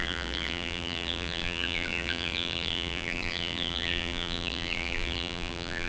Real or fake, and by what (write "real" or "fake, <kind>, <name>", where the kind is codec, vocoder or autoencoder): fake, vocoder, BigVGAN v2